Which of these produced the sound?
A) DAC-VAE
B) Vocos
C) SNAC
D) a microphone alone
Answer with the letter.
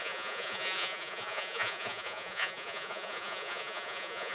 B